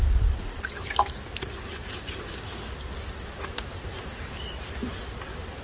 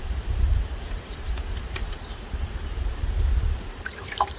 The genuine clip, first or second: first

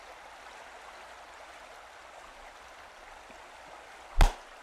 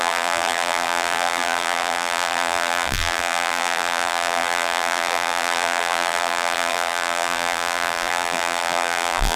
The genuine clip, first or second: first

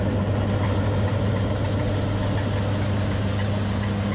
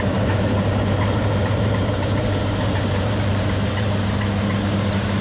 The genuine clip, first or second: first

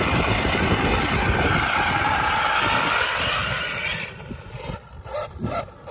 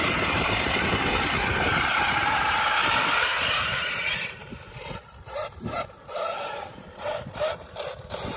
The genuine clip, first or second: first